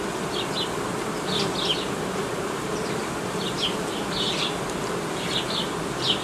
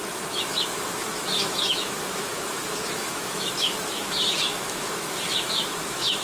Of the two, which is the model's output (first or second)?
second